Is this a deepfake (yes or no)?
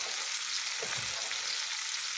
no